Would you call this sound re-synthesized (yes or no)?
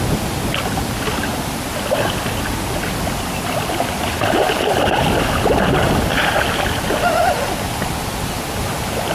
no